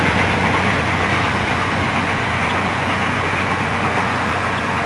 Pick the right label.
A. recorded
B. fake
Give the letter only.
B